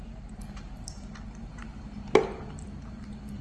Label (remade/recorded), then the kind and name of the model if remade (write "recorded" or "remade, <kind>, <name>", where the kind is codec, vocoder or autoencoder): recorded